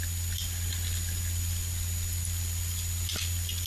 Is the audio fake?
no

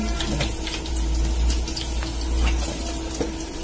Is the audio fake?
no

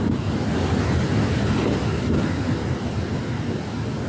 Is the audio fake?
no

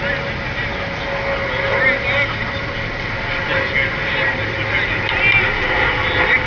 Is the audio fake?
no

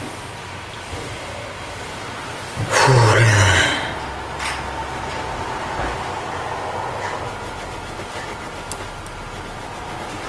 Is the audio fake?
no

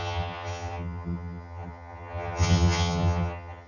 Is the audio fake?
yes